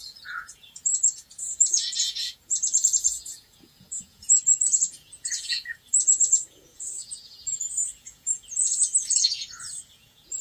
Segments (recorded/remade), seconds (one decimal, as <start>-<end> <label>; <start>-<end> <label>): 0.0-10.4 remade